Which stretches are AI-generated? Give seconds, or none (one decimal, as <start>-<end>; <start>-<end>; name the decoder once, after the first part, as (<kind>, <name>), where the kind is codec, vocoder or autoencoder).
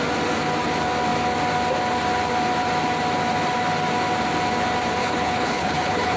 5.0-6.2 (codec, HILCodec)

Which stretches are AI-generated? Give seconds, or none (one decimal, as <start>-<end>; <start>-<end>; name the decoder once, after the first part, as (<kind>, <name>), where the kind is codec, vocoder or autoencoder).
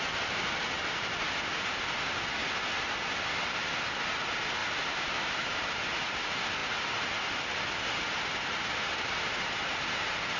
none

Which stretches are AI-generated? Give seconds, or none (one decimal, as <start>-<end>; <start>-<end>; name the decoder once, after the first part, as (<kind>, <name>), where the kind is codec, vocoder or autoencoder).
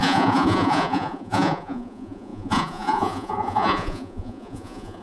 0.0-5.0 (vocoder, Vocos)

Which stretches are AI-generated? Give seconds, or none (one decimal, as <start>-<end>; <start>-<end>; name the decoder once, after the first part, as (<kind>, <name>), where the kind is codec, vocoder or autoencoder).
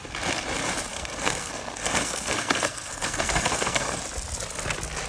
0.9-4.0 (codec, SNAC)